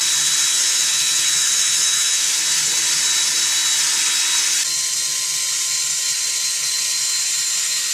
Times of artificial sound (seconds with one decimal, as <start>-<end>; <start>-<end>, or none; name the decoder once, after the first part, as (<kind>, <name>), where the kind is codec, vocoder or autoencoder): 0.5-2.4 (autoencoder, DAC-VAE)